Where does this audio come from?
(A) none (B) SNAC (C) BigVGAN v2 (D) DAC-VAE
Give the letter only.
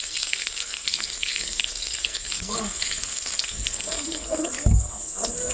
B